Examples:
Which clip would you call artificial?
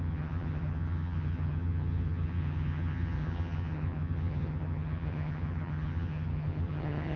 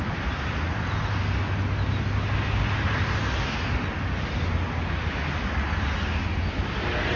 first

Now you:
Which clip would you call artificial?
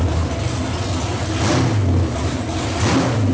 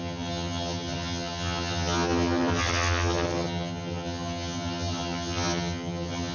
second